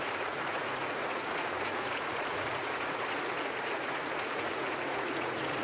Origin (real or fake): fake